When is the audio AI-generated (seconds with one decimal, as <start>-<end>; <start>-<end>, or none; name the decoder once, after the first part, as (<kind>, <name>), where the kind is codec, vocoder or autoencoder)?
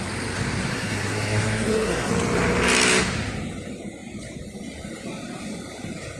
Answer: 0.7-2.1 (codec, SNAC)